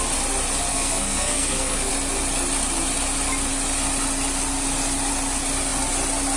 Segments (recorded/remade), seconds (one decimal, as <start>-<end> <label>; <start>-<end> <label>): 0.0-0.7 recorded; 0.7-1.9 remade; 1.9-6.4 recorded